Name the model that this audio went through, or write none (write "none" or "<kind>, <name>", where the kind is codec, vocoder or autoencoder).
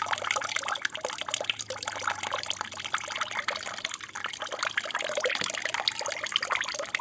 none